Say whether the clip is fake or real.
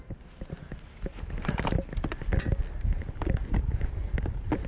real